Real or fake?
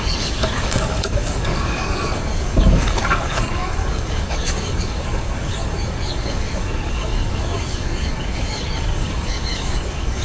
fake